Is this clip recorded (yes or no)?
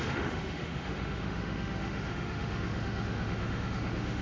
no